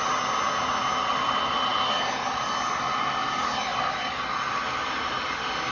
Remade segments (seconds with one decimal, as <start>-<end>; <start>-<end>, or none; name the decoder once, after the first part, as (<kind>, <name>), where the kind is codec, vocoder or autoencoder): none